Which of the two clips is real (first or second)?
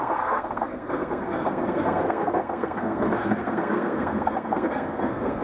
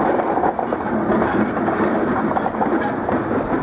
second